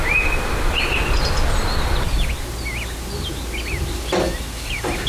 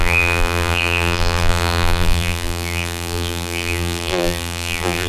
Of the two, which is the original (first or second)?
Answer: first